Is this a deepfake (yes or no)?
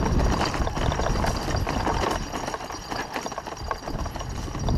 no